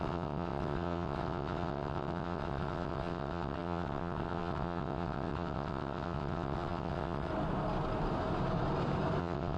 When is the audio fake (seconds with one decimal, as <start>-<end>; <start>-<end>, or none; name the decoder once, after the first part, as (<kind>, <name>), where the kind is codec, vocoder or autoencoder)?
0.0-7.3 (vocoder, WaveNeXt); 9.2-9.6